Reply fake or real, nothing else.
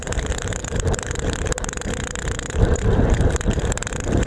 fake